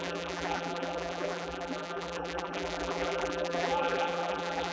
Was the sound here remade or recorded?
remade